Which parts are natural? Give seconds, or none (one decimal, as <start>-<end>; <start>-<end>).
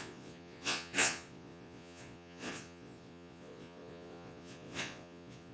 none